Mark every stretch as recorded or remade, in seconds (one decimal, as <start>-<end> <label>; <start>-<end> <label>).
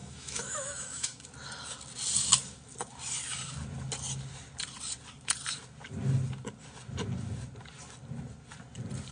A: 0.0-1.3 remade; 1.3-9.1 recorded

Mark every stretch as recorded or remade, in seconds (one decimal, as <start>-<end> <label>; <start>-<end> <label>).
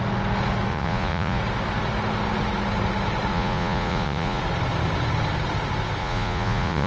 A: 0.0-0.7 recorded; 0.7-1.4 remade; 1.4-3.3 recorded; 3.3-4.4 remade; 4.4-6.0 recorded; 6.0-6.9 remade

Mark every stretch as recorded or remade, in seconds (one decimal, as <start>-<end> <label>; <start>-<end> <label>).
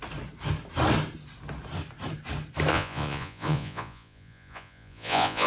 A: 0.0-2.7 recorded; 2.7-5.5 remade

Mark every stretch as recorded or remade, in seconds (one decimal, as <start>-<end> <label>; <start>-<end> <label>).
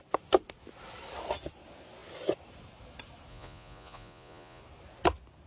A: 0.0-3.3 recorded; 3.3-4.6 remade; 4.6-5.5 recorded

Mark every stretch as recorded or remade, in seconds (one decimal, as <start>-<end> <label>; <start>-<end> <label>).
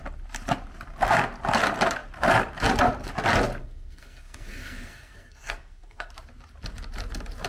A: 0.0-3.6 recorded; 3.6-6.1 remade; 6.1-7.5 recorded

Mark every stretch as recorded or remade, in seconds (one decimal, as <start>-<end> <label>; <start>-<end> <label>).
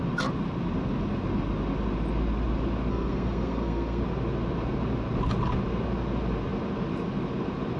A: 0.0-2.9 recorded; 2.9-4.0 remade; 4.0-7.8 recorded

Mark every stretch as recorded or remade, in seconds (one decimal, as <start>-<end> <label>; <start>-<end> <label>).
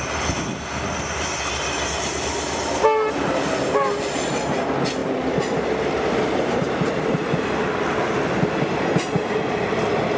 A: 0.0-10.2 recorded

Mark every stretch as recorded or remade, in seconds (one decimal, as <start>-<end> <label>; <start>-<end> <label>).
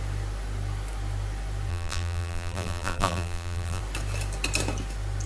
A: 0.0-1.7 recorded; 1.7-3.8 remade; 3.8-5.3 recorded